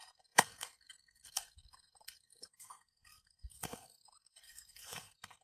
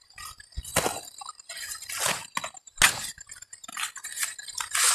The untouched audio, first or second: second